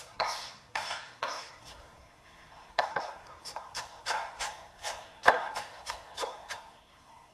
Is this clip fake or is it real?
fake